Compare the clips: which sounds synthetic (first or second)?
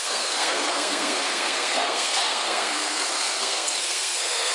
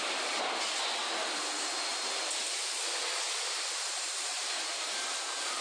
first